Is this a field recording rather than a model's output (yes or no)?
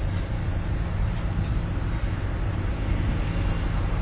yes